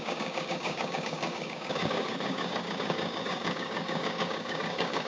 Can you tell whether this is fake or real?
fake